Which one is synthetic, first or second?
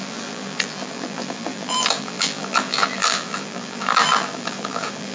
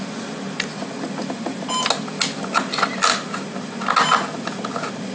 first